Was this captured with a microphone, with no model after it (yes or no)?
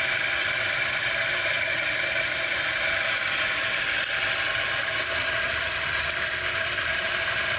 yes